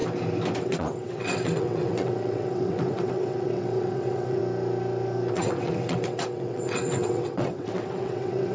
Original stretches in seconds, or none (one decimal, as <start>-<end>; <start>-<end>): 0.0-0.6; 4.4-5.3